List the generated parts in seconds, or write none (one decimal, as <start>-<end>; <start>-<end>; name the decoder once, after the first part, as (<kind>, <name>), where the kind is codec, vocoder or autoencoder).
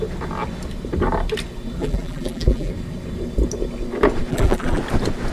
1.8-2.7 (vocoder, BigVGAN v2); 4.3-4.8